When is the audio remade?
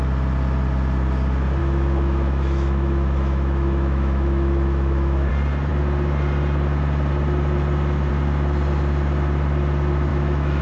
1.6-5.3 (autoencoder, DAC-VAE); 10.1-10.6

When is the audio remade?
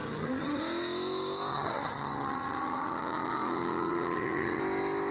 0.0-0.6 (vocoder, HiFi-GAN); 1.5-4.6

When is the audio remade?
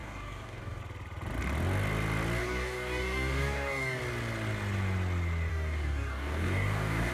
0.0-0.8 (codec, DAC); 2.4-4.0; 5.5-7.1